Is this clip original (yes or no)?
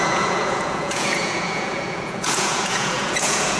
no